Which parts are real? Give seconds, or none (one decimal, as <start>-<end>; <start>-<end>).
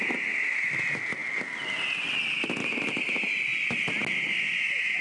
0.0-5.0